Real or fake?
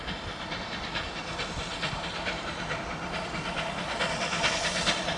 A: fake